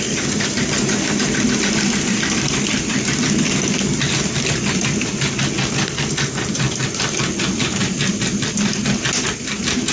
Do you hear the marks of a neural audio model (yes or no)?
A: no